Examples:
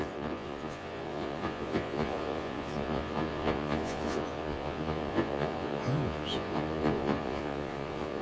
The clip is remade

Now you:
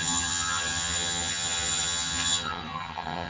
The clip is remade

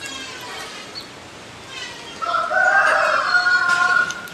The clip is recorded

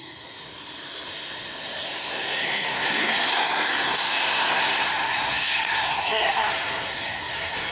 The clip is remade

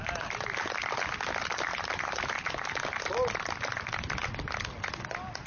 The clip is recorded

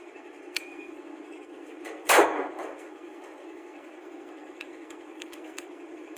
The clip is remade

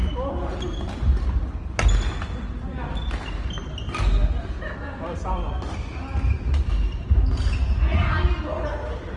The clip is recorded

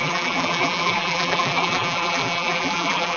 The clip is remade